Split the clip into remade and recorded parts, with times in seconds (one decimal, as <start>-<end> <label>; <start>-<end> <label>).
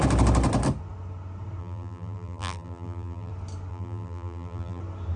0.0-1.6 recorded; 1.6-3.3 remade; 3.3-3.7 recorded; 3.7-4.8 remade; 4.8-5.2 recorded